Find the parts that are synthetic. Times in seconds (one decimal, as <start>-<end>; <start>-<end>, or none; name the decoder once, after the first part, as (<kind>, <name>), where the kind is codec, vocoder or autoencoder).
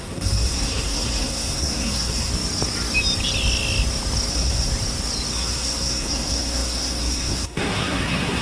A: 0.0-2.3 (codec, SNAC); 4.3-4.7; 5.3-8.4